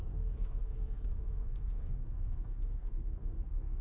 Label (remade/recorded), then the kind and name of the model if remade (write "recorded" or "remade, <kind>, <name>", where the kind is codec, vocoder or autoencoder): remade, codec, SNAC